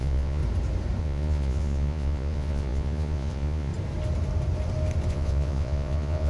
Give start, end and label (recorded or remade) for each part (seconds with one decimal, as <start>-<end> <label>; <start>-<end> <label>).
0.0-0.4 remade; 0.4-1.0 recorded; 1.0-3.7 remade; 3.7-5.1 recorded; 5.1-6.3 remade